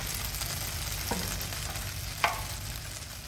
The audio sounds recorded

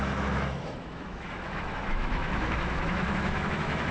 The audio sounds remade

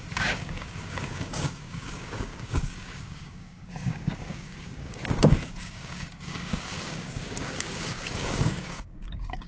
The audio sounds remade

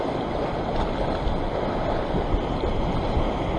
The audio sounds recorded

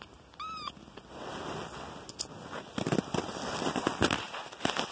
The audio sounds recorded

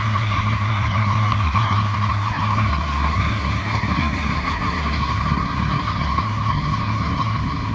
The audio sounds remade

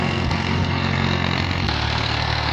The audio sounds remade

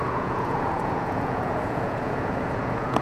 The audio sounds remade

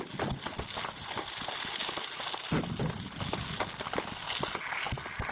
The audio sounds recorded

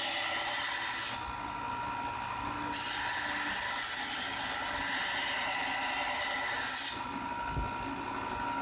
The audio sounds recorded